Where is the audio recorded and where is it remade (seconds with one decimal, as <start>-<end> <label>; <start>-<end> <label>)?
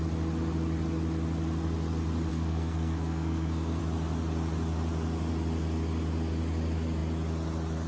0.0-2.3 recorded; 2.3-3.8 remade; 3.8-7.9 recorded